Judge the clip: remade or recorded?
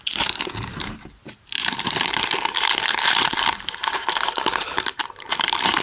remade